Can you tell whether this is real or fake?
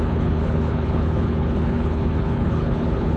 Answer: fake